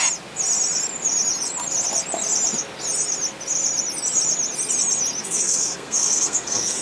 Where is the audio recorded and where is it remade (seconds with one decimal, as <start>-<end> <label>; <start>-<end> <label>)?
0.0-5.2 recorded; 5.2-6.8 remade